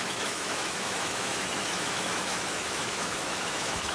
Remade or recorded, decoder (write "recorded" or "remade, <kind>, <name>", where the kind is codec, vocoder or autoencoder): remade, autoencoder, DAC-VAE